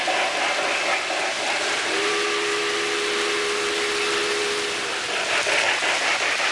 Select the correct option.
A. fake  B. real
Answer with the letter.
B